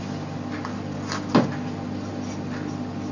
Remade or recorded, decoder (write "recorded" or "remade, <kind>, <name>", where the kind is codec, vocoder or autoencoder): recorded